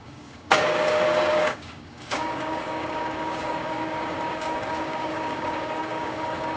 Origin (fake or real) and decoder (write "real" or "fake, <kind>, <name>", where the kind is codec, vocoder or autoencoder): fake, codec, DAC